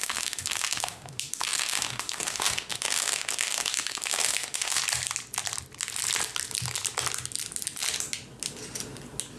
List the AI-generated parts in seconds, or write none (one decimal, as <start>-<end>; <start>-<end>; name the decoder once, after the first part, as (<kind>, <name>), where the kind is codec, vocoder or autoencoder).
0.0-4.8 (autoencoder, DAC-VAE)